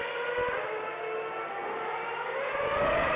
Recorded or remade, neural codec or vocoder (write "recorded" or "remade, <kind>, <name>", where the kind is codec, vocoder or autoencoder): recorded